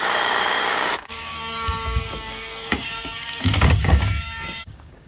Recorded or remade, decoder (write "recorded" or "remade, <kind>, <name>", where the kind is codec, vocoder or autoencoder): remade, codec, DAC